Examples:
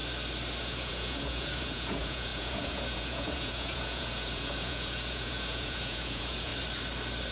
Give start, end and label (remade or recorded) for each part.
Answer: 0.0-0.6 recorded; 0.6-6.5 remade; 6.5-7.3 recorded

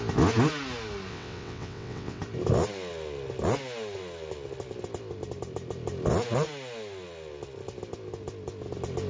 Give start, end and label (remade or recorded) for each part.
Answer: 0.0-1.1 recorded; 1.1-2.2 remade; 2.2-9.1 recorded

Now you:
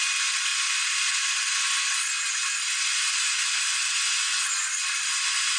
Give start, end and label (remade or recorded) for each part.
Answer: 0.0-5.6 recorded

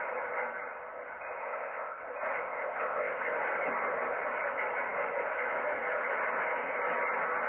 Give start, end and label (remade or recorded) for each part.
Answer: 0.0-1.4 recorded; 1.4-2.0 remade; 2.0-2.4 recorded; 2.4-3.3 remade; 3.3-7.5 recorded

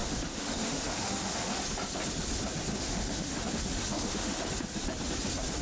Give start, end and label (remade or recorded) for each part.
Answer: 0.0-1.6 remade; 1.6-2.7 recorded; 2.7-3.5 remade; 3.5-3.9 recorded; 3.9-4.4 remade; 4.4-5.6 recorded

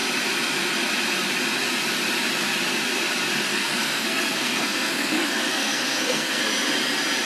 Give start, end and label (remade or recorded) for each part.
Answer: 0.0-3.5 recorded; 3.5-6.4 remade; 6.4-7.3 recorded

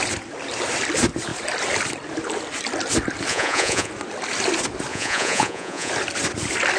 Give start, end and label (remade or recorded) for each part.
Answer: 0.0-3.3 recorded; 3.3-3.9 remade; 3.9-4.9 recorded; 4.9-5.9 remade; 5.9-6.8 recorded